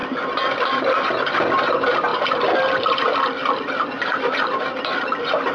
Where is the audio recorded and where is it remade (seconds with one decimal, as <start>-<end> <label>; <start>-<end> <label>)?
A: 0.0-0.8 remade; 0.8-2.1 recorded; 2.1-5.5 remade